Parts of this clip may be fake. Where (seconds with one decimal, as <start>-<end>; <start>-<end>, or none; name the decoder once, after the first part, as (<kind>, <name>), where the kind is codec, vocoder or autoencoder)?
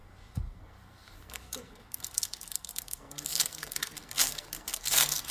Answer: 0.0-5.3 (codec, SNAC)